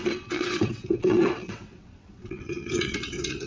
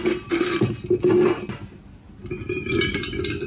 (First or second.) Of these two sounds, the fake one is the first